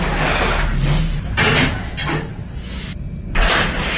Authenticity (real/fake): real